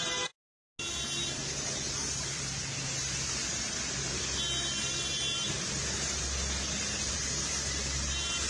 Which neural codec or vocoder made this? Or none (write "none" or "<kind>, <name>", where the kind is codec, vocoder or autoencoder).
none